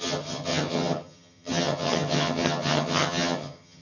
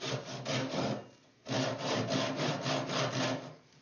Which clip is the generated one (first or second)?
first